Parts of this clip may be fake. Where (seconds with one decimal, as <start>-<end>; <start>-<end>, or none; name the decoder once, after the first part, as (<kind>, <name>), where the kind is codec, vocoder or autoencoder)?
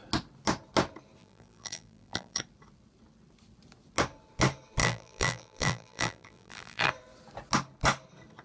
1.2-2.4 (vocoder, BigVGAN v2); 4.8-6.9